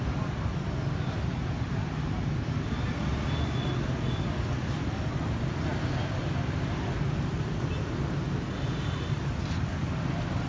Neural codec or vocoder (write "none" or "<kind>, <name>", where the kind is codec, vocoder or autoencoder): none